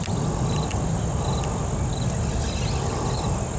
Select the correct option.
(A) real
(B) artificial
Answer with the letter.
A